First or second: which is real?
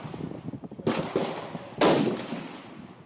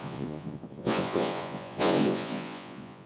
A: first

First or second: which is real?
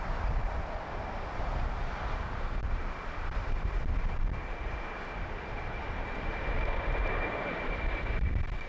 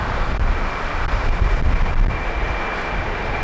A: second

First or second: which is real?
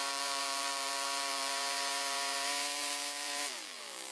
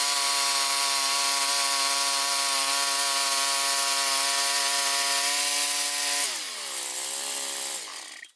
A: second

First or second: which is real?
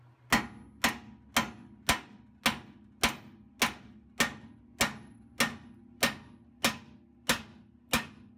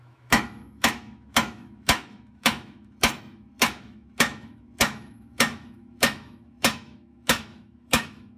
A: first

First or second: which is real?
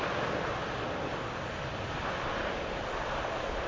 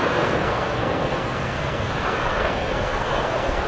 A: first